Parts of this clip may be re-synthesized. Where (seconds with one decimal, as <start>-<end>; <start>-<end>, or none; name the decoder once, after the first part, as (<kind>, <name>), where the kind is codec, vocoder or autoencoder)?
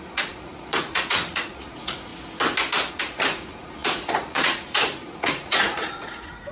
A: 0.0-2.1 (vocoder, Vocos); 2.9-6.5